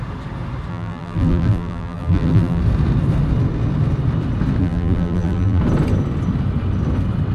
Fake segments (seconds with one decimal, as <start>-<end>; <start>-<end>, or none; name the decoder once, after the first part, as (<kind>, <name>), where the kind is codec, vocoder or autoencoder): 0.7-2.6 (vocoder, BigVGAN v2); 4.6-5.6